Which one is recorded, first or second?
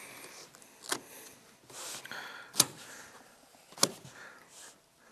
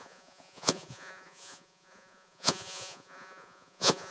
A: first